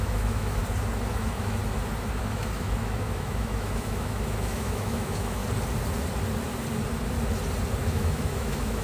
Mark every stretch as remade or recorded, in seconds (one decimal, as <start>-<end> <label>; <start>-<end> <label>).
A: 0.0-0.6 remade; 0.6-1.1 recorded; 1.1-1.6 remade; 1.6-2.2 recorded; 2.2-5.4 remade; 5.4-7.8 recorded; 7.8-8.8 remade